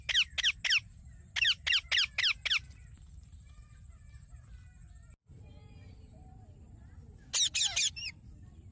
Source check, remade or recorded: recorded